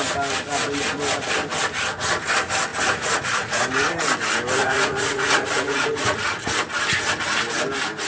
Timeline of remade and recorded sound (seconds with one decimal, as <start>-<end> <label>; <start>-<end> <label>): 0.0-2.7 recorded; 2.7-3.6 remade; 3.6-4.6 recorded; 4.6-6.2 remade; 6.2-8.1 recorded